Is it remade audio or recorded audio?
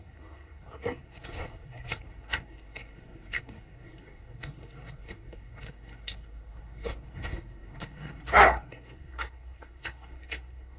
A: remade